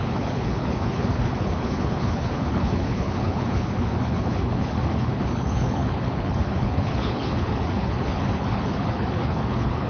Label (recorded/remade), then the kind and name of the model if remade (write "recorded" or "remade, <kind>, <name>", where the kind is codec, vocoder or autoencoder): remade, codec, HILCodec